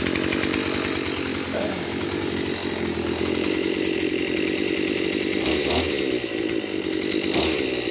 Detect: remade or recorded recorded